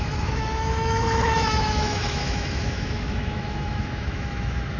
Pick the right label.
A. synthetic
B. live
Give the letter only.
A